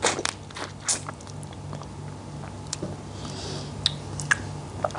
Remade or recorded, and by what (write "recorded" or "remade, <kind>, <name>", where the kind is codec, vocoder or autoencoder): recorded